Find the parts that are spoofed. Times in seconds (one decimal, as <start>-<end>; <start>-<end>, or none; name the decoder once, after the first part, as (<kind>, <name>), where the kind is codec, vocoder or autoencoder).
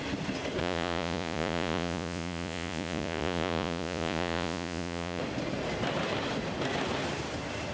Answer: 0.6-5.2 (vocoder, Vocos)